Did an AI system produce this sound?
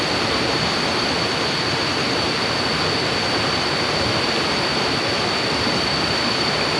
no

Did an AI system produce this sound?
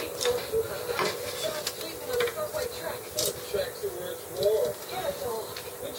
no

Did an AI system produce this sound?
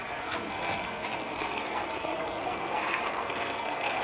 yes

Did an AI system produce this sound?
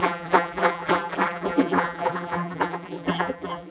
yes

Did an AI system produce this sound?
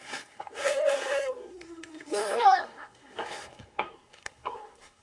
yes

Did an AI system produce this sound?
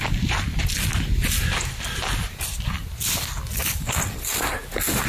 no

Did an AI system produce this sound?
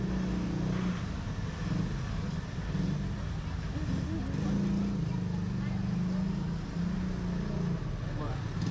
no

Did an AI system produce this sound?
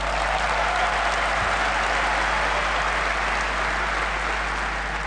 no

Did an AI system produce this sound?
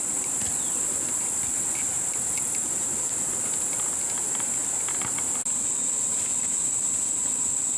no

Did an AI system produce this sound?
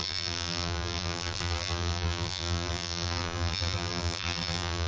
yes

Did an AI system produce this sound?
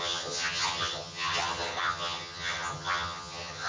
yes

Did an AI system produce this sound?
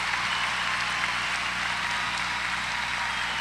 no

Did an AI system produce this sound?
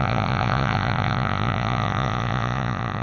yes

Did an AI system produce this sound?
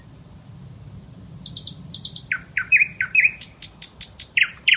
no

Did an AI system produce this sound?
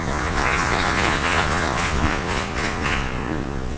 yes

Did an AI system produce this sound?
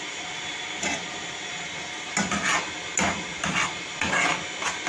no